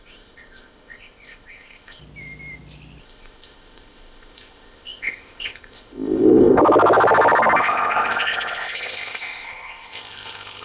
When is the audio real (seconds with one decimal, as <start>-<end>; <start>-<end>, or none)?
2.0-3.0; 6.6-7.6